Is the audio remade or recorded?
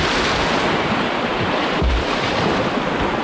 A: remade